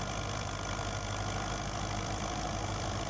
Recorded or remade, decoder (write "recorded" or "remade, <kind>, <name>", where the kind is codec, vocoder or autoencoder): remade, vocoder, BigVGAN v2